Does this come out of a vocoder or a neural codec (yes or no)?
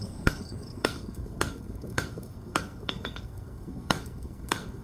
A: yes